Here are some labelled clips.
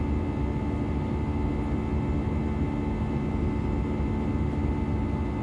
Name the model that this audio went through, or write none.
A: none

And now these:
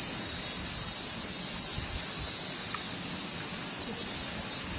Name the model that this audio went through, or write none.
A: none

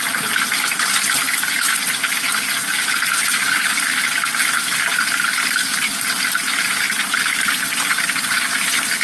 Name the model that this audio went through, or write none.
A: none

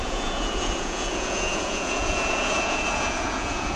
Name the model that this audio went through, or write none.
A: vocoder, Vocos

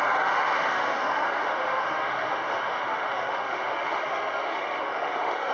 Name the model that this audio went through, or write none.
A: autoencoder, DAC-VAE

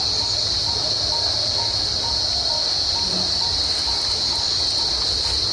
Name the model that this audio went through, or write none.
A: none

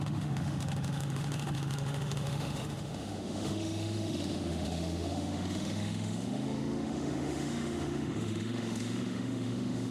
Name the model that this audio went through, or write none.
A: autoencoder, DAC-VAE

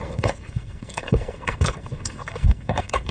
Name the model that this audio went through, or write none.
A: codec, SNAC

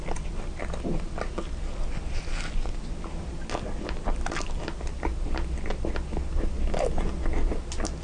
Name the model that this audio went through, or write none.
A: none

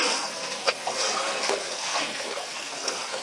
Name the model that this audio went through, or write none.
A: codec, SNAC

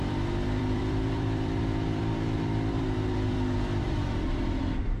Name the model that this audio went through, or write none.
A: vocoder, BigVGAN v2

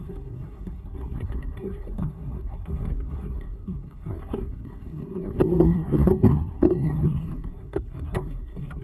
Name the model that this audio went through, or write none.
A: codec, SNAC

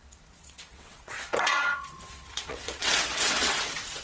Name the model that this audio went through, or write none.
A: vocoder, WaveNeXt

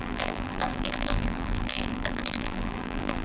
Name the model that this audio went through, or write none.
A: vocoder, BigVGAN v2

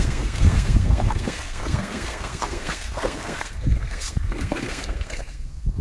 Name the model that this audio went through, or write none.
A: codec, SNAC